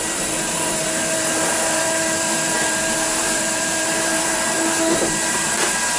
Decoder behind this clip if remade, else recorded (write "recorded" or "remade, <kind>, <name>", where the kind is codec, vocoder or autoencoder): remade, vocoder, BigVGAN v2